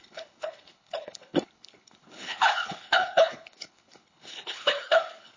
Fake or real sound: fake